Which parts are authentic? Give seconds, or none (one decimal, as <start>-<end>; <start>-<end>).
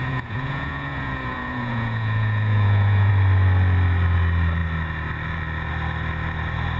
3.1-6.8